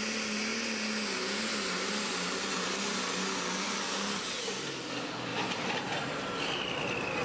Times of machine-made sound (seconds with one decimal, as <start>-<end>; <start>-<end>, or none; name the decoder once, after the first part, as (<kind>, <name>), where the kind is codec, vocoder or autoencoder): 5.3-6.6 (vocoder, BigVGAN v2)